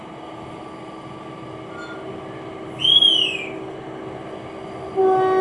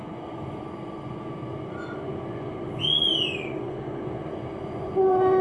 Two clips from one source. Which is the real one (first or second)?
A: first